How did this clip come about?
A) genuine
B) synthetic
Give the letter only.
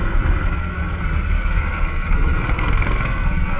B